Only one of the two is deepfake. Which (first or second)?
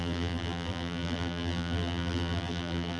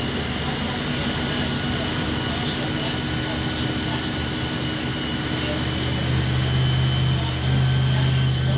first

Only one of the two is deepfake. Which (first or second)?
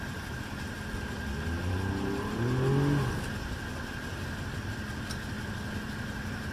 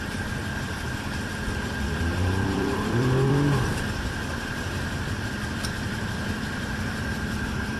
second